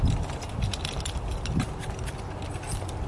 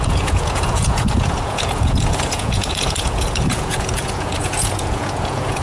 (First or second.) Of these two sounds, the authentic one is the first